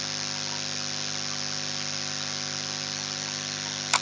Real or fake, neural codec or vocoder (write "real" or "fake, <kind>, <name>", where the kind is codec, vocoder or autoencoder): real